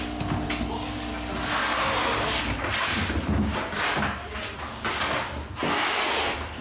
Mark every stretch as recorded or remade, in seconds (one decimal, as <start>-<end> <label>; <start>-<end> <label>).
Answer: 0.0-6.6 recorded

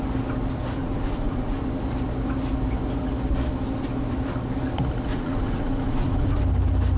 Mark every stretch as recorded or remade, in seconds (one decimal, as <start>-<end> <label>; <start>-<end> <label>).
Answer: 0.0-0.8 recorded; 0.8-1.6 remade; 1.6-5.1 recorded; 5.1-6.4 remade; 6.4-7.0 recorded

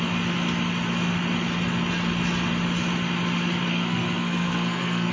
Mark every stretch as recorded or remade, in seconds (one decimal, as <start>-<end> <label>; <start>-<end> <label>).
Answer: 0.0-3.7 recorded; 3.7-5.1 remade

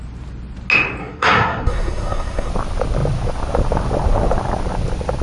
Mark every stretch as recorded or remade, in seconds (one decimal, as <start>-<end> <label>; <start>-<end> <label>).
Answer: 0.0-1.0 recorded; 1.0-2.5 remade; 2.5-5.2 recorded

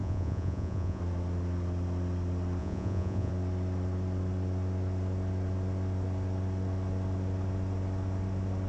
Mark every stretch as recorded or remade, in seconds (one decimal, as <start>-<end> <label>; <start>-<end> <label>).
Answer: 0.0-1.0 remade; 1.0-2.6 recorded; 2.6-3.3 remade; 3.3-8.7 recorded

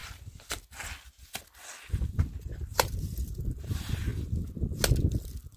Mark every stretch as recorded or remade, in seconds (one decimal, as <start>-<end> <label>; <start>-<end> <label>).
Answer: 0.0-2.1 recorded; 2.1-4.1 remade; 4.1-5.6 recorded

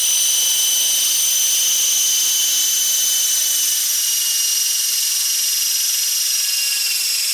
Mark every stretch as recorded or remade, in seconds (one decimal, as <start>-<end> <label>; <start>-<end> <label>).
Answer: 0.0-7.3 recorded